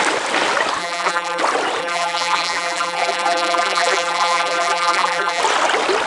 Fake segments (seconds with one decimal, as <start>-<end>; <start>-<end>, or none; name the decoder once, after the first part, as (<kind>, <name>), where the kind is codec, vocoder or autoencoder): 0.8-1.4 (vocoder, BigVGAN v2); 1.8-5.4